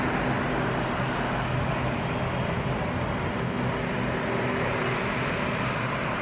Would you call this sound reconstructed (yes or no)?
no